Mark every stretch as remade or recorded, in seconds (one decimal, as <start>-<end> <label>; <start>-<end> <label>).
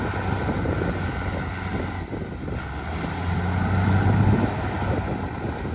0.0-5.7 recorded